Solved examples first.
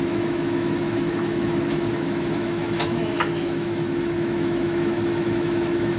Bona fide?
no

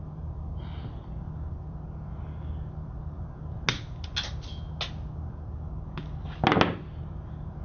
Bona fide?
yes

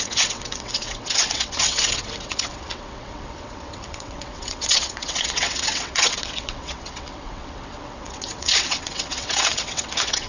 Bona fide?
no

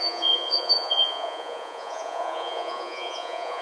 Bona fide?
no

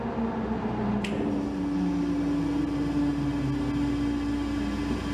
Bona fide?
yes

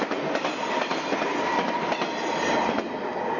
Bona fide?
yes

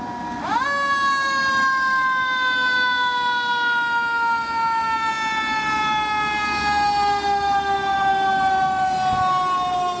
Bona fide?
yes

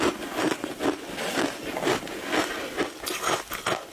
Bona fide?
yes